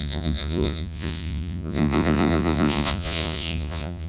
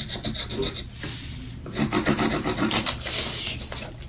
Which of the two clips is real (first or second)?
second